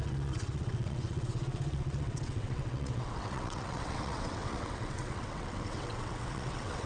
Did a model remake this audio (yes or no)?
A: yes